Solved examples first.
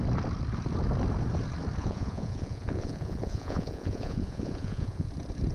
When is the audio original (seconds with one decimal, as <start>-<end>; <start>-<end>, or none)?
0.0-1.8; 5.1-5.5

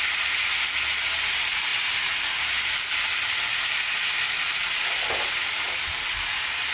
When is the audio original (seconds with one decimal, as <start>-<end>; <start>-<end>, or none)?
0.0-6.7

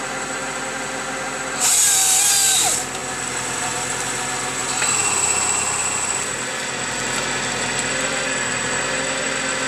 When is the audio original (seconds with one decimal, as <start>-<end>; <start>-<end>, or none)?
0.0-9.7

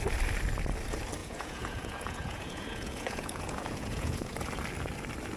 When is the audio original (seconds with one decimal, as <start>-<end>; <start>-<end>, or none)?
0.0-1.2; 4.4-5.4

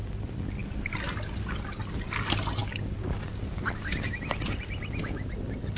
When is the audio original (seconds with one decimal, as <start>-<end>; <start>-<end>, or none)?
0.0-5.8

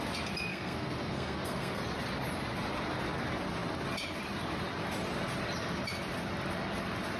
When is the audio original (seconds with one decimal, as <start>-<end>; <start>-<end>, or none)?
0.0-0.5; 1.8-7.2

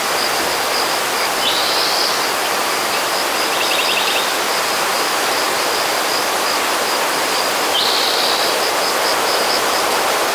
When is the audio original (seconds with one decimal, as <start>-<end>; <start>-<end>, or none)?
0.0-10.3

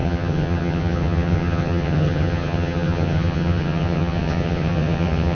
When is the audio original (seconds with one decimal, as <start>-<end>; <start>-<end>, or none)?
none